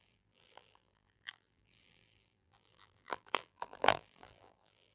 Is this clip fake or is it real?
fake